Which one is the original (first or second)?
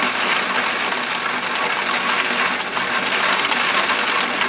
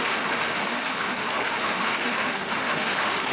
first